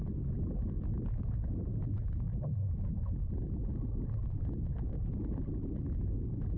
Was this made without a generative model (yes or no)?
yes